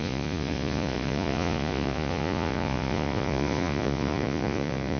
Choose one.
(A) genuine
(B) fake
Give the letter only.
B